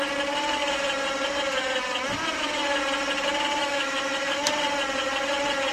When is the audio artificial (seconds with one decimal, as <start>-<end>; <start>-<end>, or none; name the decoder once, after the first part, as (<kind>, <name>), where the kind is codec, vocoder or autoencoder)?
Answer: 3.6-4.5 (autoencoder, DAC-VAE)